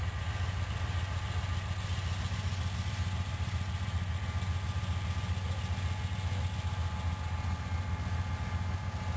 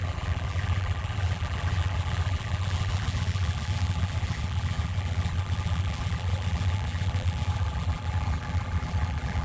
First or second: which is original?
first